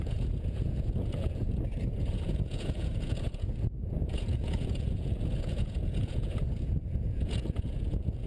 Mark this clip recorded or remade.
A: remade